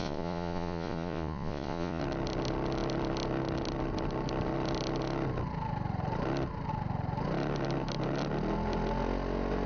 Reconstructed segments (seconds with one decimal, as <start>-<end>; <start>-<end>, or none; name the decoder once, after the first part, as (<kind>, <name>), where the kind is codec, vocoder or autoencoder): 0.0-2.0 (vocoder, Vocos)